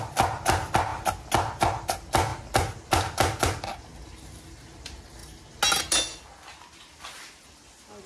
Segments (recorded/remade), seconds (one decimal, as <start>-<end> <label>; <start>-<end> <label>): 0.0-8.1 recorded